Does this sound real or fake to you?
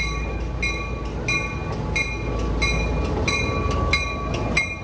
real